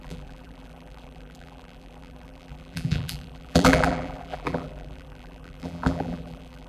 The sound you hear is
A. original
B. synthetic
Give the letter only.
B